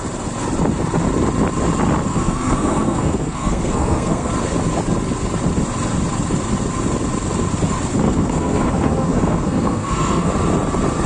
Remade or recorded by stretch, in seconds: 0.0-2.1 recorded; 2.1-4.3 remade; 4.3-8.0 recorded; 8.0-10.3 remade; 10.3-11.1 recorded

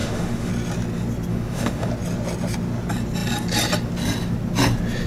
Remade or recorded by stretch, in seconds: 0.0-0.5 remade; 0.5-1.3 recorded; 1.3-1.9 remade; 1.9-5.1 recorded

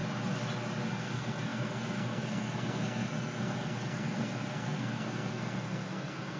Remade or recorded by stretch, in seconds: 0.0-0.9 recorded; 0.9-6.4 remade

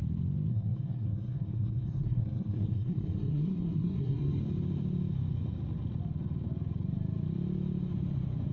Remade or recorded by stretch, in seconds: 0.0-0.5 recorded; 0.5-4.4 remade; 4.4-8.5 recorded

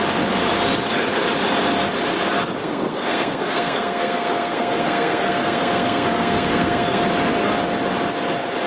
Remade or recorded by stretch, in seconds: 0.0-2.6 recorded; 2.6-7.0 remade; 7.0-8.7 recorded